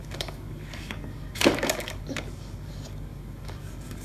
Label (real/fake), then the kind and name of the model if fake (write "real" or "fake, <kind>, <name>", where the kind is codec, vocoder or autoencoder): fake, codec, DAC